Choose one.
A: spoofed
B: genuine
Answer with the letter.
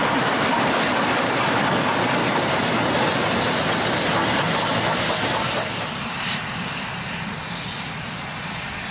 B